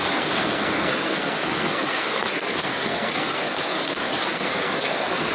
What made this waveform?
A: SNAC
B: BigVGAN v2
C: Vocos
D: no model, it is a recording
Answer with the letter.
A